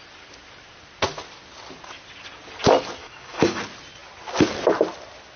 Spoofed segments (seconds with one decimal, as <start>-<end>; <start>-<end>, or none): 3.0-3.6

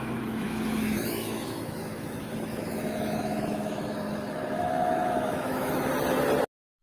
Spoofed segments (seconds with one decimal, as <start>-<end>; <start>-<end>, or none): 0.0-5.9